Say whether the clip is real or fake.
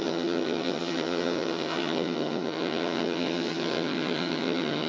fake